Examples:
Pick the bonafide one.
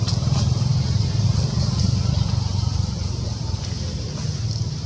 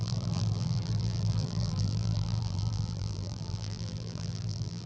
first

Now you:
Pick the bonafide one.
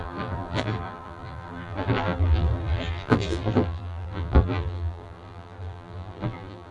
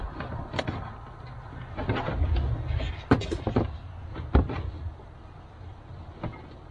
second